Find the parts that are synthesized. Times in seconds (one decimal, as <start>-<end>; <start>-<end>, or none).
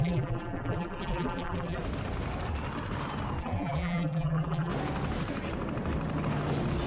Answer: 0.0-1.8; 3.4-4.7